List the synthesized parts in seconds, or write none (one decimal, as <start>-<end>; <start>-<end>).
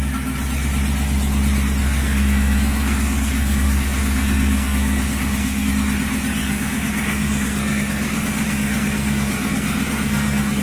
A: 1.8-5.7; 6.4-10.6